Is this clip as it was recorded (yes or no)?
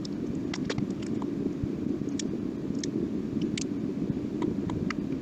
yes